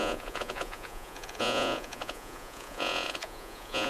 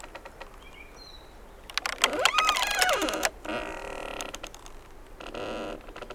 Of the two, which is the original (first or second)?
second